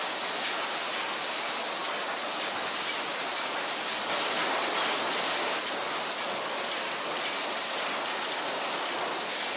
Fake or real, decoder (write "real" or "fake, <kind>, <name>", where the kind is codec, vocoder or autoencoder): real